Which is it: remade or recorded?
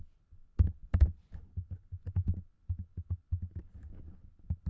recorded